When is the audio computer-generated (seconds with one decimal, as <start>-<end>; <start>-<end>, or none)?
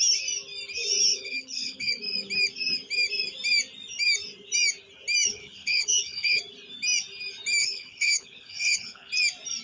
1.1-1.9; 5.3-6.4; 7.6-9.1